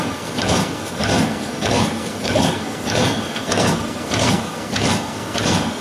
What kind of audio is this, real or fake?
fake